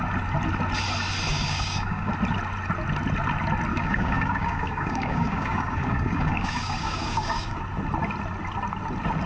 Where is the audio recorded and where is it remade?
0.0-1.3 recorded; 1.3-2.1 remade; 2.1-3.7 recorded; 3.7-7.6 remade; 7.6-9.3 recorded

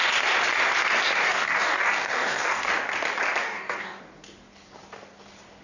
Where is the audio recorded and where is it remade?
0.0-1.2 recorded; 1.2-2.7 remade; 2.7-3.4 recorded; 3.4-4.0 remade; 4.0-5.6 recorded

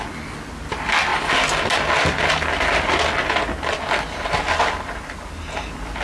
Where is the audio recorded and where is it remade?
0.0-6.0 recorded

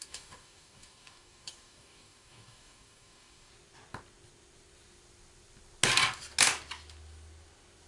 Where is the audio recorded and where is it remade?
0.0-3.5 remade; 3.5-7.9 recorded

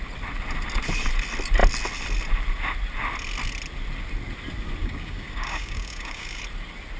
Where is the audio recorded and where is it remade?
0.0-4.8 recorded; 4.8-6.4 remade; 6.4-7.0 recorded

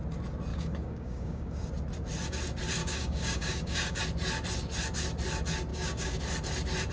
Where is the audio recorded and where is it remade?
0.0-0.5 recorded; 0.5-1.7 remade; 1.7-2.8 recorded; 2.8-4.0 remade; 4.0-5.7 recorded; 5.7-6.2 remade; 6.2-6.9 recorded

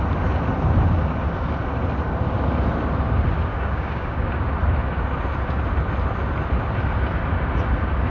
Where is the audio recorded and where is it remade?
0.0-3.5 recorded; 3.5-4.3 remade; 4.3-8.1 recorded